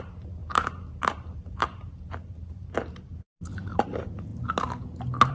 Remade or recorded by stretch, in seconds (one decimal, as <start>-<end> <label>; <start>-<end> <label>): 0.0-4.3 remade; 4.3-5.3 recorded